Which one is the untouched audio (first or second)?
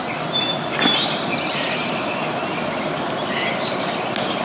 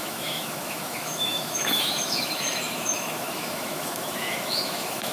first